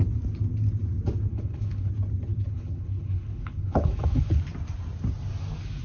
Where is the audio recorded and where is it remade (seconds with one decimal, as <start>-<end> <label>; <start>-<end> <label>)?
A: 0.0-1.3 recorded; 1.3-1.9 remade; 1.9-2.3 recorded; 2.3-4.4 remade; 4.4-5.8 recorded